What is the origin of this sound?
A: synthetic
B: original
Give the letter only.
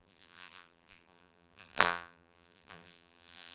A